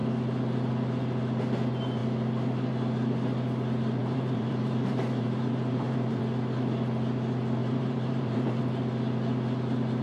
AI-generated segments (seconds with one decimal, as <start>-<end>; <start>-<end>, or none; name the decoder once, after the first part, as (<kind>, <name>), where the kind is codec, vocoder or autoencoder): 4.0-6.2 (vocoder, BigVGAN v2); 7.6-8.6